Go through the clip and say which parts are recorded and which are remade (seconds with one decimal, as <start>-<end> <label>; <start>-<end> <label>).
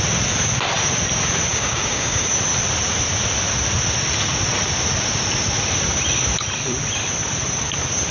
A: 0.0-1.5 recorded; 1.5-2.3 remade; 2.3-8.1 recorded